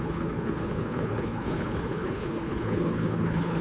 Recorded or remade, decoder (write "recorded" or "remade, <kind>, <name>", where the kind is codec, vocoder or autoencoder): remade, codec, HILCodec